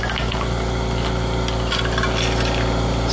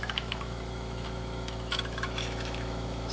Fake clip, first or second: second